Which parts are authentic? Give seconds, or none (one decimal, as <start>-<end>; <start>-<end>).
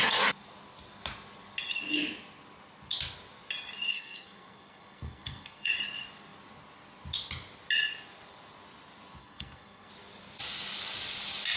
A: 0.0-3.9; 5.7-9.2; 9.9-11.6